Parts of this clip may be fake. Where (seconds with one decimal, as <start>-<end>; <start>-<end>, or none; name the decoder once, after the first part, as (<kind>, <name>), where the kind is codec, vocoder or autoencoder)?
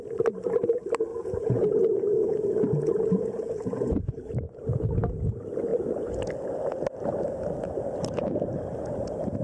1.1-4.2 (vocoder, Vocos)